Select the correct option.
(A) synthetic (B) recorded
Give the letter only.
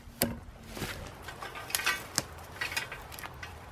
B